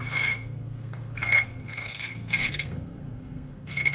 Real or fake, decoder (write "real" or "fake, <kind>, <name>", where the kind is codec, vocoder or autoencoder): fake, codec, SNAC